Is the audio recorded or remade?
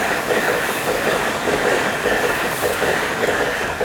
remade